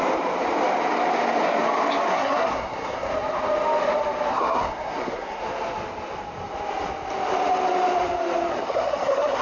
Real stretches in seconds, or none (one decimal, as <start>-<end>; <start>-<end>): 0.0-2.1; 3.1-4.3; 5.4-8.5